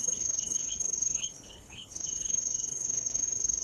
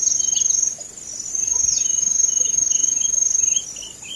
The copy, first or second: first